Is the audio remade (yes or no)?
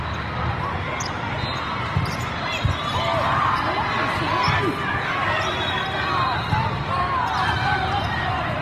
no